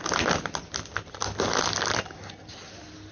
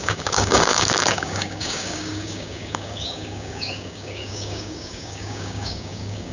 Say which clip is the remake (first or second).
second